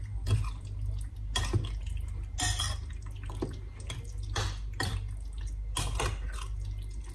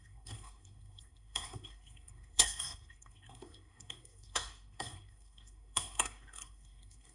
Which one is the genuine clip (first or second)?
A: first